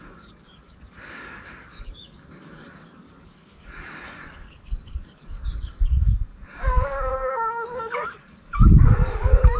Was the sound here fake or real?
fake